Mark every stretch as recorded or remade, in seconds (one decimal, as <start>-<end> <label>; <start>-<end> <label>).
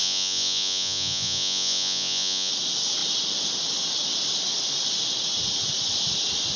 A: 0.0-2.5 remade; 2.5-6.6 recorded